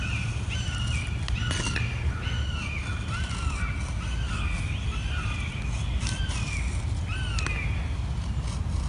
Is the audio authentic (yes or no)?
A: yes